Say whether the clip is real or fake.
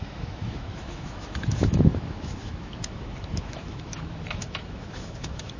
fake